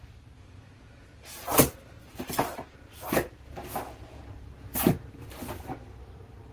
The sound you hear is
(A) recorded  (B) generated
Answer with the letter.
B